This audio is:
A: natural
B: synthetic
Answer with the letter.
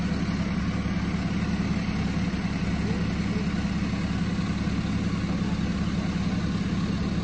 A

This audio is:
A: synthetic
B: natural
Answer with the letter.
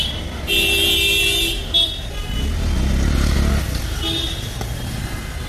B